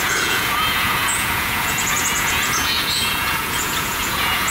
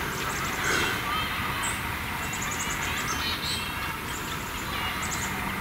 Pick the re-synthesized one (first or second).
first